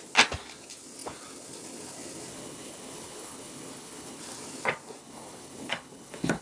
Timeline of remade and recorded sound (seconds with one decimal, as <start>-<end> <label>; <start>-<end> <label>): 0.0-2.3 recorded; 2.3-4.2 remade; 4.2-5.0 recorded; 5.0-6.4 remade